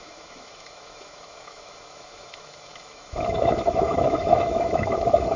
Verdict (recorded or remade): remade